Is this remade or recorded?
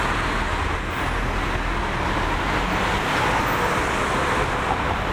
recorded